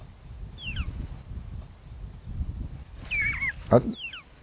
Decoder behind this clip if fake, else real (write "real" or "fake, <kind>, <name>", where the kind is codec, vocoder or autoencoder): real